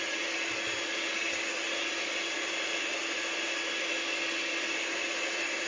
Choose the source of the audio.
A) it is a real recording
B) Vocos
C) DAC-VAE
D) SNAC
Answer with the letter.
A